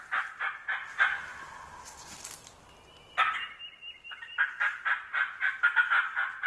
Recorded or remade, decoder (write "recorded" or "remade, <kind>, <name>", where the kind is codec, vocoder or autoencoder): recorded